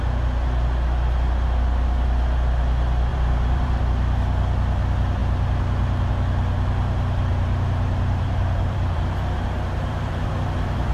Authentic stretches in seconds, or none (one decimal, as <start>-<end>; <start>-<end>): 0.0-3.1; 3.8-7.3; 10.3-10.9